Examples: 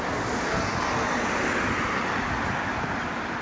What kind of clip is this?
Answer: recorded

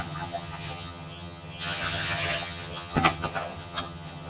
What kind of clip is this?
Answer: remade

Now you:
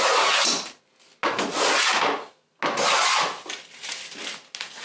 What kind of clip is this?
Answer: recorded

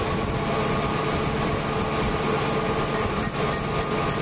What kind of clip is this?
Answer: recorded